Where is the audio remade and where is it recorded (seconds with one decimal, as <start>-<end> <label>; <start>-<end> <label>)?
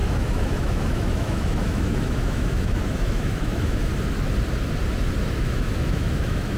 0.0-3.9 remade; 3.9-5.3 recorded; 5.3-6.6 remade